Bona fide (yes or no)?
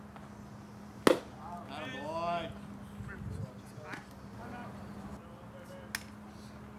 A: yes